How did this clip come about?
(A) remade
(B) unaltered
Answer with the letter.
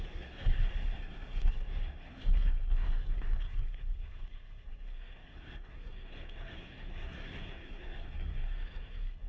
A